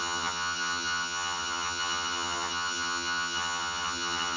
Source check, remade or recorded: remade